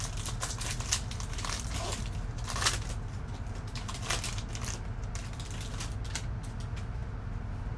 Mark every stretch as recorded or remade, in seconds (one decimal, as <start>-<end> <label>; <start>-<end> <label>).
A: 0.0-7.8 recorded